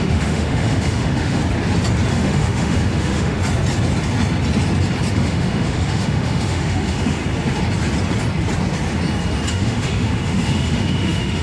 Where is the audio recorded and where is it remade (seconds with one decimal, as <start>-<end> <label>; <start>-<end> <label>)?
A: 0.0-1.4 remade; 1.4-2.1 recorded; 2.1-3.4 remade; 3.4-5.1 recorded; 5.1-7.2 remade; 7.2-9.5 recorded; 9.5-11.4 remade